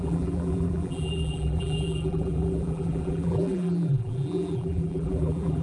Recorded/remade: remade